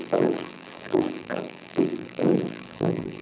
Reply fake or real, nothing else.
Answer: fake